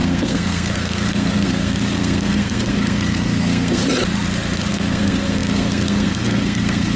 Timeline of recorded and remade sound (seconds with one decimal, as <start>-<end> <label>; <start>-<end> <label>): 0.0-3.8 remade; 3.8-4.7 recorded; 4.7-7.0 remade